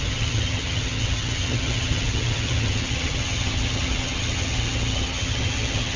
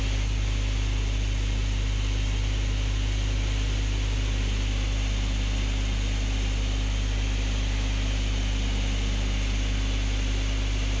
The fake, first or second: first